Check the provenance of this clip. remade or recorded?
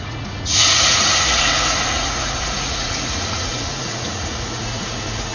remade